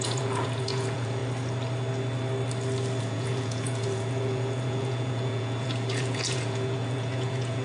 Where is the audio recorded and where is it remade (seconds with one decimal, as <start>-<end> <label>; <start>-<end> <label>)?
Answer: 0.0-1.2 remade; 1.2-3.0 recorded; 3.0-7.6 remade